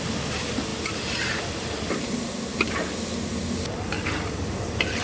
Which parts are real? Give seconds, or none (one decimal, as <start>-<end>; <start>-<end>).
0.0-5.0